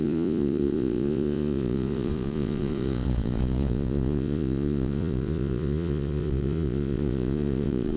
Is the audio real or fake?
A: fake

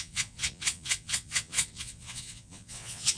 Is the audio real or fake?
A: fake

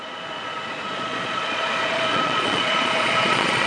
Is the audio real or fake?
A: fake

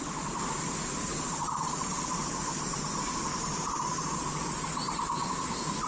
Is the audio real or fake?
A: real